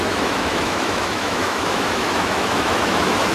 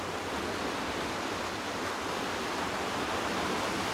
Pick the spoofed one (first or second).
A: first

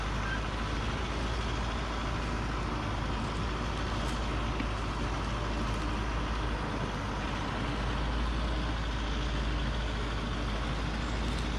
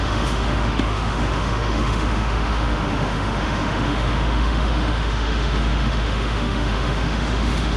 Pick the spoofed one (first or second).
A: second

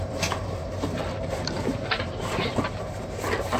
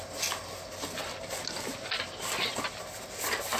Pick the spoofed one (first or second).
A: first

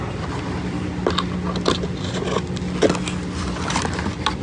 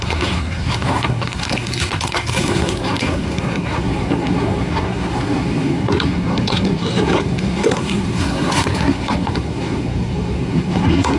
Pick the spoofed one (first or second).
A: second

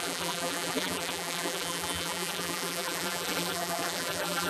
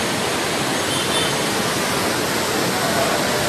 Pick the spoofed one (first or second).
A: first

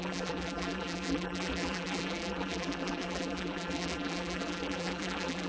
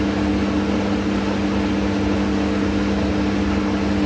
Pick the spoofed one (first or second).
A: first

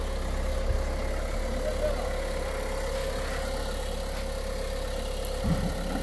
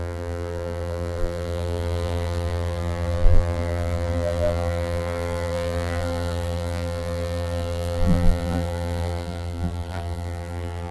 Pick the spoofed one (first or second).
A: second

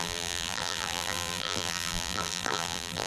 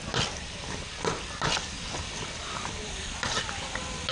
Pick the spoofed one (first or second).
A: first